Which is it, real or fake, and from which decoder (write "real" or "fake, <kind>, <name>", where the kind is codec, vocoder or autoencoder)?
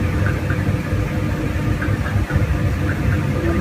real